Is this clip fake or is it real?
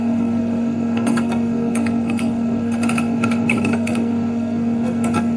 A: fake